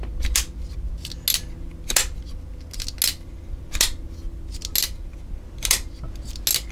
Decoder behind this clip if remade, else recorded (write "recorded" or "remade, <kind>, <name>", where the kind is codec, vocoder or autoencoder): recorded